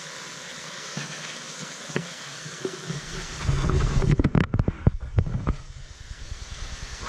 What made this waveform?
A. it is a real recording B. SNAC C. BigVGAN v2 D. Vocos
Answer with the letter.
B